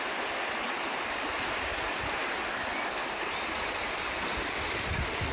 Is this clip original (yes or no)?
yes